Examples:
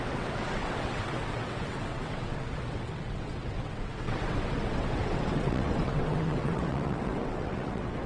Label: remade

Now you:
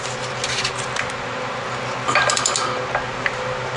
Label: recorded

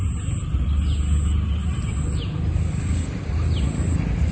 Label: recorded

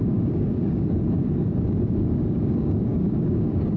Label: remade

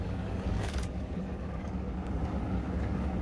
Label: remade